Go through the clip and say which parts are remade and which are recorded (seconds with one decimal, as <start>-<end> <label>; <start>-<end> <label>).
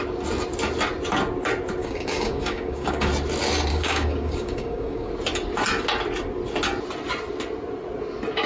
0.0-1.8 recorded; 1.8-3.1 remade; 3.1-3.7 recorded; 3.7-5.1 remade; 5.1-8.5 recorded